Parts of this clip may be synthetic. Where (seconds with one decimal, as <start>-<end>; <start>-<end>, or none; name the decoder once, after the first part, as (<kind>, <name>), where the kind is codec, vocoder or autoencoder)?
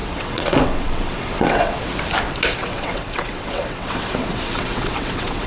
0.0-1.8 (vocoder, WaveNeXt); 2.6-5.5